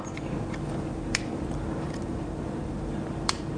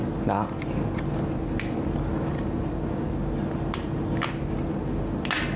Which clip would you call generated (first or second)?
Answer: first